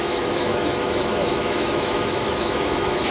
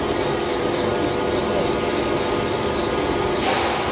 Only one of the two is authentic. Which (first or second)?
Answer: second